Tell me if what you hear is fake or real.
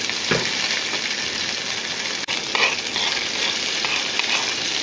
real